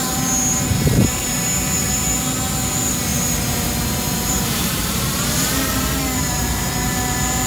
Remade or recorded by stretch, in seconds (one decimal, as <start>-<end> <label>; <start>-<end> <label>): 0.0-3.1 recorded; 3.1-6.7 remade; 6.7-7.5 recorded